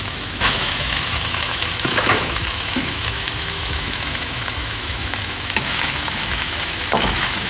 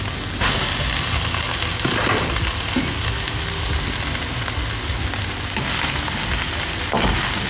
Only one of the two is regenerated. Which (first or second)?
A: first